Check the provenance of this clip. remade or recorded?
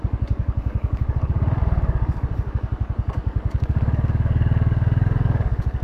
remade